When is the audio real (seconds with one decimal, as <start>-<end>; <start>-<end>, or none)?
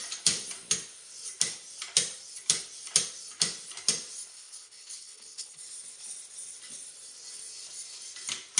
0.0-4.3; 5.6-8.6